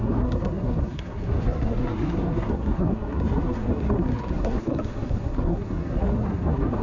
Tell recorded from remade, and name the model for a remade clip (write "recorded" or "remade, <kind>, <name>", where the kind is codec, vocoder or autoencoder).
remade, codec, SNAC